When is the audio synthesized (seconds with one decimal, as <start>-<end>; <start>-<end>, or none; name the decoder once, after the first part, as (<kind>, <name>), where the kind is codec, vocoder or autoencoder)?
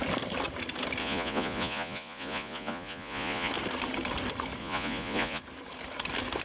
1.0-3.5 (vocoder, Vocos); 4.6-5.4